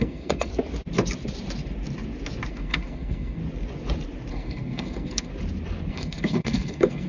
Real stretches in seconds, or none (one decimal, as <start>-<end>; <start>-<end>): 0.5-2.5; 3.4-4.3; 5.3-5.9